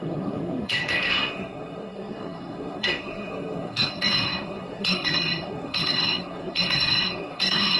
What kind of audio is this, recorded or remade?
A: remade